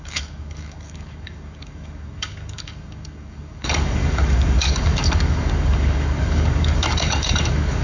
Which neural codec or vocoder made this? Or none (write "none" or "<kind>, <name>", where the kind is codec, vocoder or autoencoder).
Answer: codec, DAC